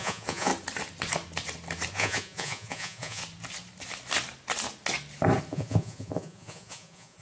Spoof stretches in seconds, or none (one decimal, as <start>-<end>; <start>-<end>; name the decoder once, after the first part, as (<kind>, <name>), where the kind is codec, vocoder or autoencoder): 0.0-0.5 (vocoder, Vocos); 1.9-3.2; 5.5-7.2